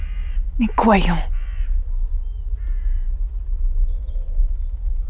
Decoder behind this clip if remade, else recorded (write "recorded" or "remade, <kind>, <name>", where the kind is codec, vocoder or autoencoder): recorded